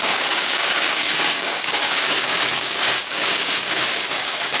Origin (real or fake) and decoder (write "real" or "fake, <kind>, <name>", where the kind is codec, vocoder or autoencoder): fake, codec, DAC